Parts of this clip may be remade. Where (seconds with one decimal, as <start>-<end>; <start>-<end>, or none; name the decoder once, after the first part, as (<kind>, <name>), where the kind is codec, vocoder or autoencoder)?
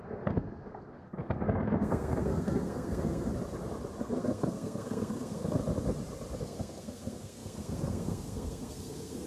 0.0-3.3 (codec, SNAC); 4.0-5.6; 6.4-9.3